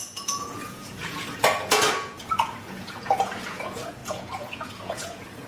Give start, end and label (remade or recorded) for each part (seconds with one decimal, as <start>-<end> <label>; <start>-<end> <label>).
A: 0.0-5.5 remade